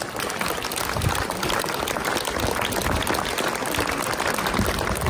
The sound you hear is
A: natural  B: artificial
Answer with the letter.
A